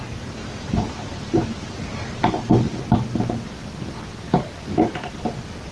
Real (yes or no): yes